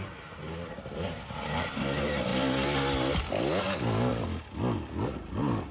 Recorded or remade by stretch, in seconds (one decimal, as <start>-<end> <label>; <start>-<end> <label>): 0.0-5.7 recorded